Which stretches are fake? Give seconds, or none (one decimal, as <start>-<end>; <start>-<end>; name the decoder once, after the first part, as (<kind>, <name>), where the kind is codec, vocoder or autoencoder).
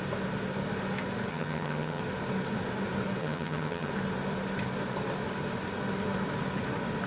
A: 1.3-2.0 (vocoder, HiFi-GAN); 3.2-3.9